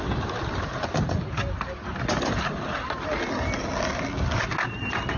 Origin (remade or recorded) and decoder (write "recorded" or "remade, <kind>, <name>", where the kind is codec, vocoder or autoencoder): recorded